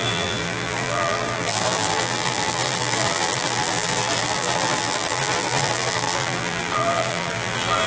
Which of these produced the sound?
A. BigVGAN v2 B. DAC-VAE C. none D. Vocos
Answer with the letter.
A